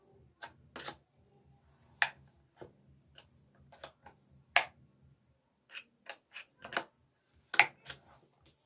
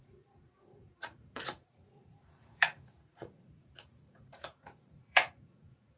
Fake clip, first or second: second